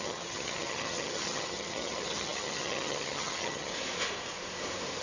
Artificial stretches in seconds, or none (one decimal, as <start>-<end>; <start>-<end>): 0.0-3.7